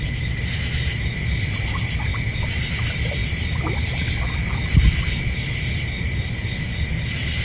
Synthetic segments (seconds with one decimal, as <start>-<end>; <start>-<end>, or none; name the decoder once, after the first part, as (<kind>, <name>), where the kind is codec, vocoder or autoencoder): none